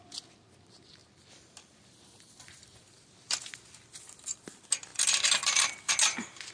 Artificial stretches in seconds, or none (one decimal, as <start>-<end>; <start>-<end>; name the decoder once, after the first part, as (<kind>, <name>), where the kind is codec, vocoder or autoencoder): 1.0-3.4 (vocoder, BigVGAN v2); 4.9-5.9